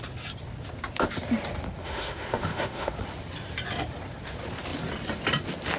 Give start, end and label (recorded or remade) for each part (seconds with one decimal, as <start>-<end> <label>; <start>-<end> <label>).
0.0-1.8 recorded; 1.8-2.9 remade; 2.9-5.8 recorded